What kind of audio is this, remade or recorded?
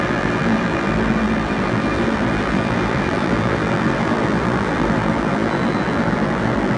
remade